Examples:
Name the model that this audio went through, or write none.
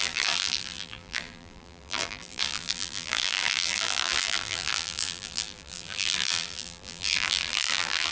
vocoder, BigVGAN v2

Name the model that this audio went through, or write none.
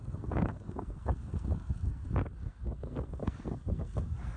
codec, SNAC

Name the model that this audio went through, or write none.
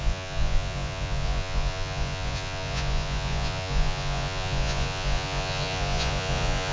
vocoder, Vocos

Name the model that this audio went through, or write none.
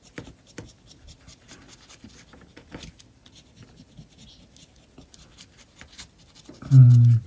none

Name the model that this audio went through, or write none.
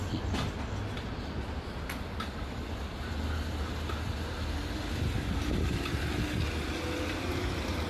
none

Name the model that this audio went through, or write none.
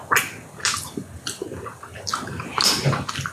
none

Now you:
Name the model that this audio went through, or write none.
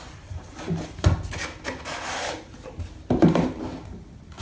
none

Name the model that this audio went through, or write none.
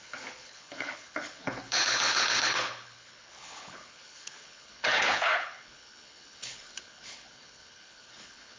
codec, HILCodec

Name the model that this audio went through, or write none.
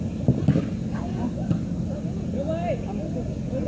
none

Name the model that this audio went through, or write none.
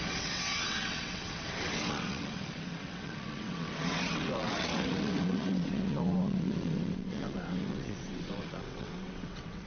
vocoder, WaveNeXt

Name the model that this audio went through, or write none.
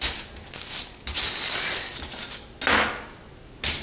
none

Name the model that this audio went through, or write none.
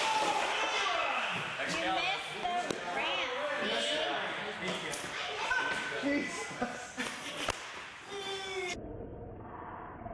none